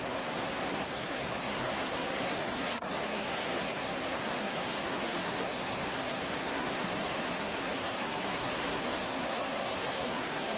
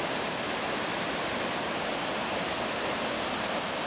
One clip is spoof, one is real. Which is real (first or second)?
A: second